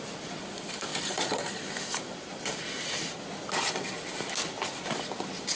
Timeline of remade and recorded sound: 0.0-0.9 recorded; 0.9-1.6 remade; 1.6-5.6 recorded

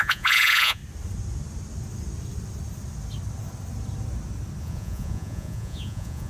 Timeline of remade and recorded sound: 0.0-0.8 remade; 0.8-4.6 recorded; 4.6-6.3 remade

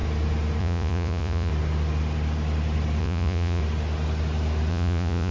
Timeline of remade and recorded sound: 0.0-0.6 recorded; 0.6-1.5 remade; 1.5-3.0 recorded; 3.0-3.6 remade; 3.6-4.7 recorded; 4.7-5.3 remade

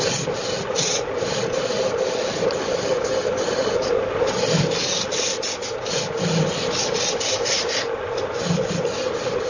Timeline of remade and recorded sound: 0.0-9.5 recorded

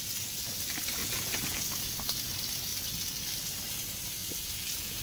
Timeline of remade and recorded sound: 0.0-1.0 recorded; 1.0-1.6 remade; 1.6-4.2 recorded; 4.2-5.0 remade

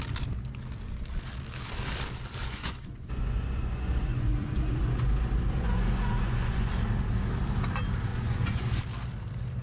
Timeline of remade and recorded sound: 0.0-2.4 recorded; 2.4-6.7 remade; 6.7-8.1 recorded; 8.1-8.8 remade; 8.8-9.6 recorded

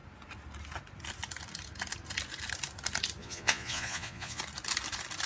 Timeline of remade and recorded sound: 0.0-3.2 recorded; 3.2-4.4 remade; 4.4-5.3 recorded

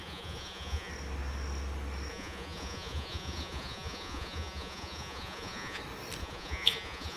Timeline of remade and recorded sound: 0.0-0.9 remade; 0.9-2.1 recorded; 2.1-5.8 remade; 5.8-6.2 recorded; 6.2-7.2 remade